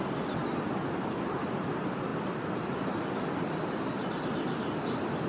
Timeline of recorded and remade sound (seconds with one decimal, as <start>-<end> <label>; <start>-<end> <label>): 0.0-5.3 recorded